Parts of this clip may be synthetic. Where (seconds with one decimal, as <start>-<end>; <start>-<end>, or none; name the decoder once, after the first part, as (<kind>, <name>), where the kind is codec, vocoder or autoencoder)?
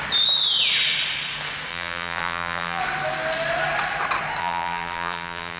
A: 1.7-2.8 (vocoder, BigVGAN v2); 4.4-5.6